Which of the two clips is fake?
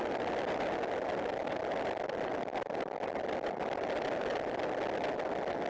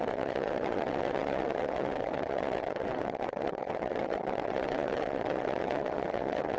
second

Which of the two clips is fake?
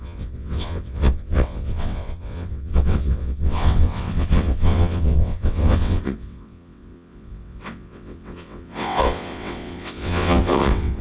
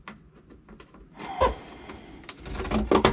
first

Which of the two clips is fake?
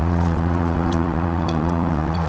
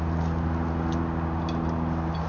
first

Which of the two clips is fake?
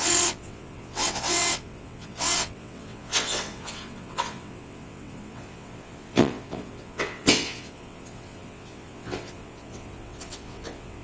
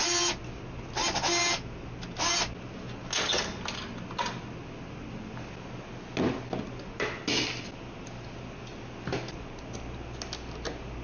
first